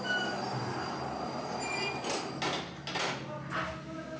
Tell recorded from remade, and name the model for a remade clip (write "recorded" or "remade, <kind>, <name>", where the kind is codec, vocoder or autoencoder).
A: recorded